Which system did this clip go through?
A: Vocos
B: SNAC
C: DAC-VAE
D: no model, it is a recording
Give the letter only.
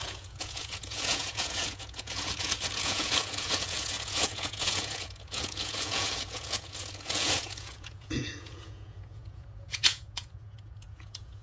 A